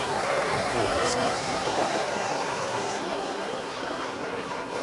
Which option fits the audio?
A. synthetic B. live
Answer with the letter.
A